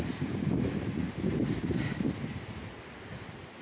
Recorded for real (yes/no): yes